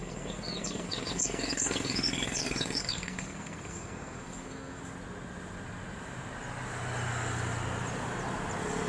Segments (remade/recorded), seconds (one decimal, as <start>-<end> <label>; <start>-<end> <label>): 0.0-4.8 remade; 4.8-8.9 recorded